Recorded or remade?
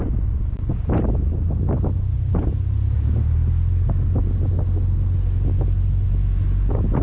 recorded